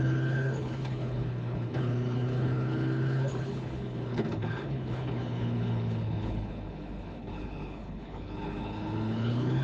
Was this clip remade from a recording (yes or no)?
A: yes